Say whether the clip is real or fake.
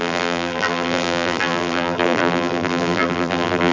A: fake